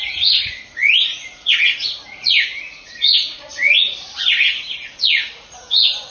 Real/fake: fake